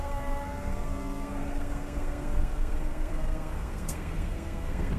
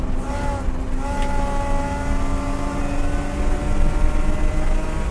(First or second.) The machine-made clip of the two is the first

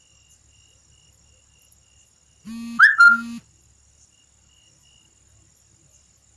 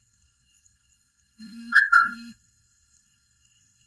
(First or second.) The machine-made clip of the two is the second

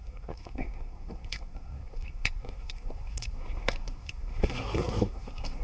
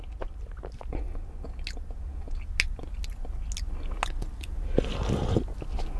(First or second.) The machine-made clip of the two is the first